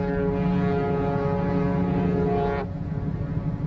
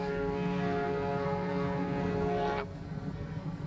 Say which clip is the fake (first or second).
second